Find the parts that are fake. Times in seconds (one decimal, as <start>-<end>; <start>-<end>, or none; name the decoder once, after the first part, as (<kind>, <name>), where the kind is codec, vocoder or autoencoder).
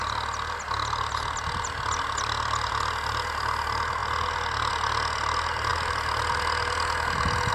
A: none